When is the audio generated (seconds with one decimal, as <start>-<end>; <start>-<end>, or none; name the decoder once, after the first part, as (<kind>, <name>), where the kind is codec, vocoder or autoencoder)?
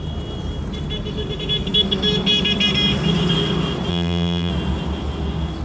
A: 3.9-4.5 (vocoder, BigVGAN v2)